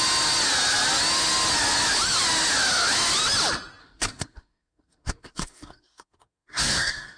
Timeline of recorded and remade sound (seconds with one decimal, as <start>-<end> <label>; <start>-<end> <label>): 0.0-3.8 recorded; 3.8-7.2 remade